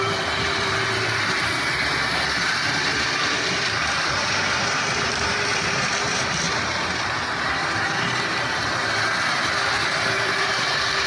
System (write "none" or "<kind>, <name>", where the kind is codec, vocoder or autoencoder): vocoder, BigVGAN v2